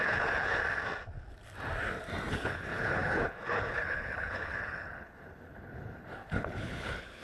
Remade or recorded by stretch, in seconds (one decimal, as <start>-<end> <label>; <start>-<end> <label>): 0.0-0.6 remade; 0.6-2.3 recorded; 2.3-7.2 remade